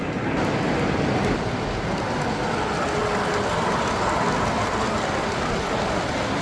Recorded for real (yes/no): yes